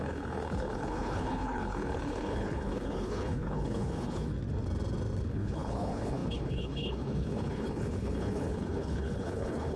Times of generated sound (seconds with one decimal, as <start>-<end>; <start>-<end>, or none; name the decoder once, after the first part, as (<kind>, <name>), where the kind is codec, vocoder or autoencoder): 0.0-4.3 (codec, HILCodec); 5.3-9.8